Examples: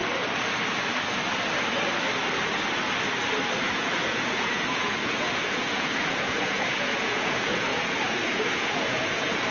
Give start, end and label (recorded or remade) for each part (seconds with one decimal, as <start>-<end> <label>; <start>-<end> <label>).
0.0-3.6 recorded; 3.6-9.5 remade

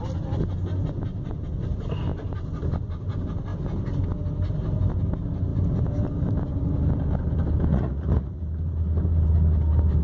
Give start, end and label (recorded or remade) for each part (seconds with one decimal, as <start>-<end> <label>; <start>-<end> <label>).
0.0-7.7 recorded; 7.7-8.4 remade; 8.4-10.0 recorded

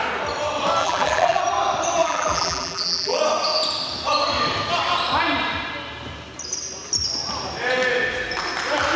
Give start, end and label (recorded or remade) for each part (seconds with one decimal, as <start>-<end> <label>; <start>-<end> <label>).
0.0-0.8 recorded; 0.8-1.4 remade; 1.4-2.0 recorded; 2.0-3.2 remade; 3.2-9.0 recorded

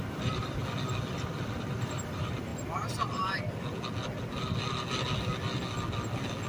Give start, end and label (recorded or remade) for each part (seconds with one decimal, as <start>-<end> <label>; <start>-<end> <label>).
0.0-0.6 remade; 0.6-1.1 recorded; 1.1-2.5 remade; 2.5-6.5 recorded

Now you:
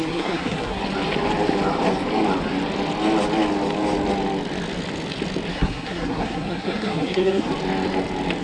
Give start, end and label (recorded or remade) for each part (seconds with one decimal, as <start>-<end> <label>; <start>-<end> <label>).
0.0-0.8 remade; 0.8-5.5 recorded; 5.5-7.5 remade; 7.5-8.4 recorded

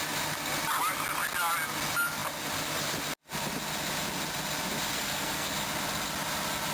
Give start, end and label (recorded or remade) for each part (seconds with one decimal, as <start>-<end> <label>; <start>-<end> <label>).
0.0-4.9 recorded; 4.9-5.5 remade; 5.5-6.7 recorded

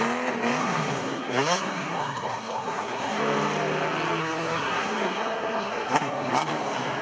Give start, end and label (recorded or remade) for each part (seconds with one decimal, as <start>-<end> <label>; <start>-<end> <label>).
0.0-0.6 recorded; 0.6-3.2 remade; 3.2-4.2 recorded; 4.2-6.3 remade; 6.3-7.0 recorded

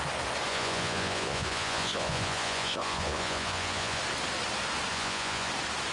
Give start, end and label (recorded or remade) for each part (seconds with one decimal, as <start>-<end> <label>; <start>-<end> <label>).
0.0-0.5 recorded; 0.5-4.0 remade; 4.0-4.9 recorded; 4.9-5.5 remade; 5.5-5.9 recorded